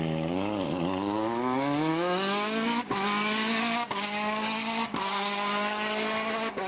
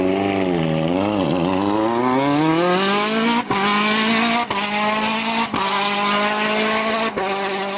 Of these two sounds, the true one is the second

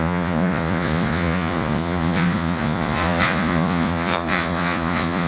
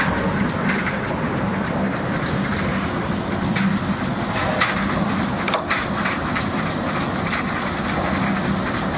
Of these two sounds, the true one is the second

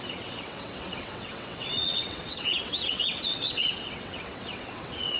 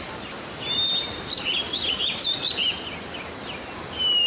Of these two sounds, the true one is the second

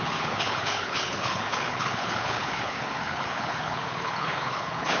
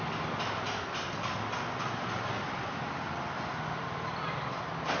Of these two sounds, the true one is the second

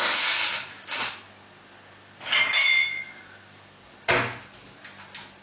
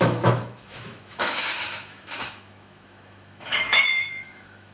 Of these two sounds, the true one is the first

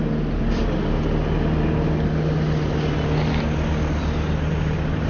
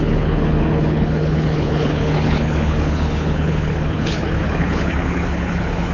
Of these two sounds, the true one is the first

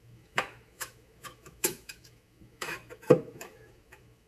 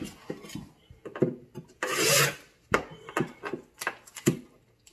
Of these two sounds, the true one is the second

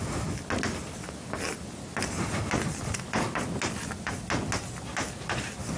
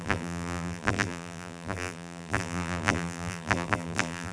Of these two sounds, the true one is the first